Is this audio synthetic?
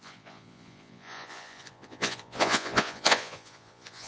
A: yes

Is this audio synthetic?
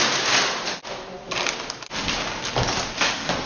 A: no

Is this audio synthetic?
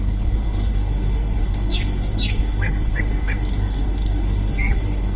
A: yes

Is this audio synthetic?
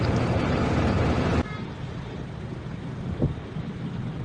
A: no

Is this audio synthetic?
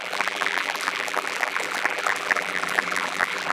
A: yes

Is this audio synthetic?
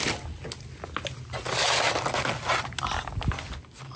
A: no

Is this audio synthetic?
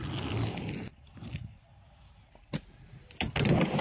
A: no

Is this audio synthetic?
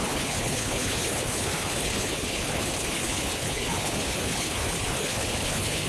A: yes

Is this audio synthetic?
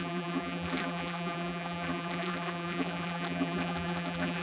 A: yes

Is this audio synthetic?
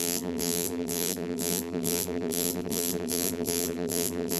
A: yes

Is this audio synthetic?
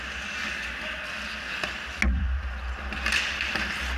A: no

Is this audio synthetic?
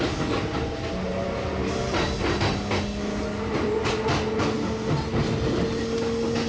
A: no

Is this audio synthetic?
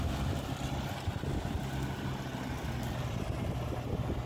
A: no